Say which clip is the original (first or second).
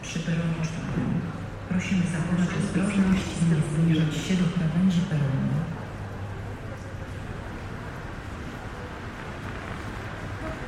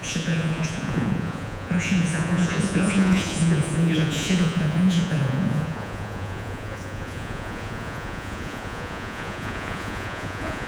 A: first